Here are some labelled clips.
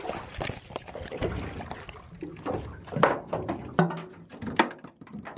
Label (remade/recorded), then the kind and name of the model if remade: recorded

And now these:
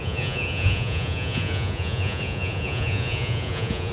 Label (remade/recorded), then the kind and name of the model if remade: remade, vocoder, Vocos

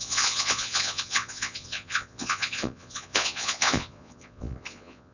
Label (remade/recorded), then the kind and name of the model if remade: remade, vocoder, Vocos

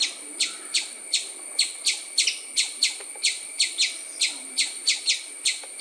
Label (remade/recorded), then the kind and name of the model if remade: recorded